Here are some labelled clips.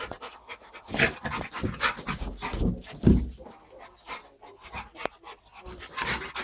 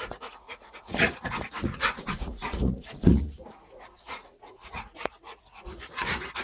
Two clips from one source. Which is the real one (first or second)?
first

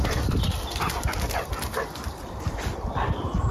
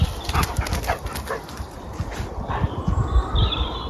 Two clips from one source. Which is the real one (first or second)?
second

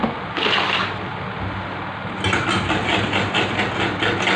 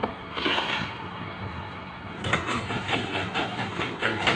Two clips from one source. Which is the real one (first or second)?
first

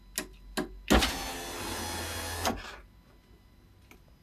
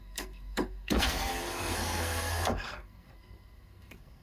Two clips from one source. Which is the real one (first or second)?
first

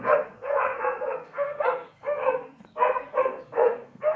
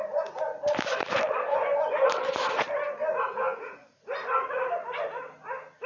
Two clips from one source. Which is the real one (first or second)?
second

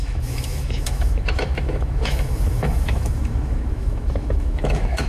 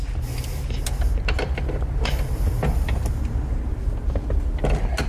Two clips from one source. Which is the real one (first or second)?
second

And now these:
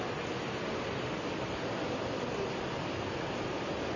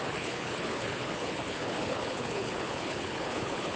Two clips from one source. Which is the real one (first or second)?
first